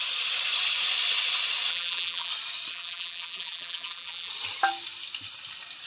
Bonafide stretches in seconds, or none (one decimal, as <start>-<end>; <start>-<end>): 0.0-1.7; 2.3-2.7; 4.3-5.9